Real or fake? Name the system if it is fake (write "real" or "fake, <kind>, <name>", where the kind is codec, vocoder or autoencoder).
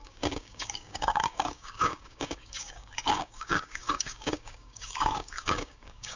fake, codec, DAC